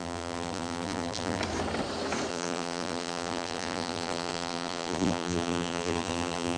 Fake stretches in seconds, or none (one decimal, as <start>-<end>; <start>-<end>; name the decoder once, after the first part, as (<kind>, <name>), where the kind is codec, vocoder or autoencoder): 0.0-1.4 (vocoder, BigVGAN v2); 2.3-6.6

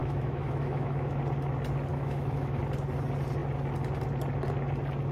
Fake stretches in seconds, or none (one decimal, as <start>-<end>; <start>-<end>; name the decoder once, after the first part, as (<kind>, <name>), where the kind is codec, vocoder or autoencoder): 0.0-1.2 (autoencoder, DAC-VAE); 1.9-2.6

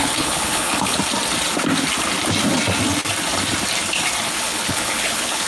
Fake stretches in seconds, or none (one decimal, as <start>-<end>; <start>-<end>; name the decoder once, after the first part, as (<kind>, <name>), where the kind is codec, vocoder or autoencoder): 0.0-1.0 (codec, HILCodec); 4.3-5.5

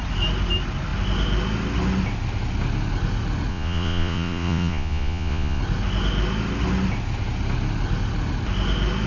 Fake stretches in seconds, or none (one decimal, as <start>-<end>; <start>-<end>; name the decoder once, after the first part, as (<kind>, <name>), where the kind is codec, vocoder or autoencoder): 3.5-5.6 (vocoder, Vocos)